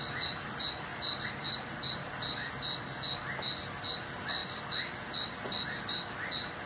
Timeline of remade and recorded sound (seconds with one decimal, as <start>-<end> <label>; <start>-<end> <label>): 0.0-6.7 recorded